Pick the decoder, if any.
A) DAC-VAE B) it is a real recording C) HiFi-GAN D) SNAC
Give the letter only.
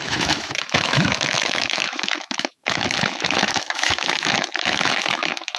A